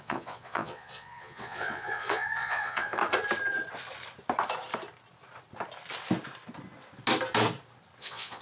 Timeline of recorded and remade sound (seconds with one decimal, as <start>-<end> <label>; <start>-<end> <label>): 0.0-3.0 remade; 3.0-8.0 recorded; 8.0-8.4 remade